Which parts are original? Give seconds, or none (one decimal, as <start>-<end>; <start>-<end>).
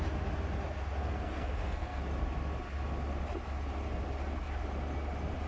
0.0-1.0; 2.0-5.5